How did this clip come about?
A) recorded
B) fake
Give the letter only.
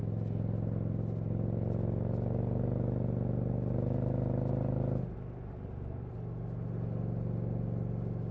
A